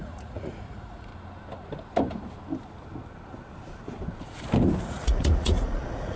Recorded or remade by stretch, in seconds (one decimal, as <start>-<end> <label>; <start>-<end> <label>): 0.0-1.1 remade; 1.1-4.8 recorded; 4.8-6.2 remade